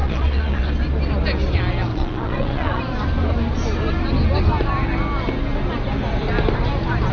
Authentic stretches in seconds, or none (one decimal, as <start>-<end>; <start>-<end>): 0.7-1.9; 2.8-7.1